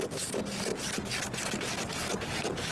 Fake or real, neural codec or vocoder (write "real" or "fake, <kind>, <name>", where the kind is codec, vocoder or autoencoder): real